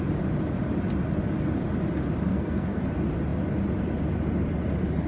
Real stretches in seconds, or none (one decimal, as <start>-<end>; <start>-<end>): 0.0-2.3; 2.8-5.1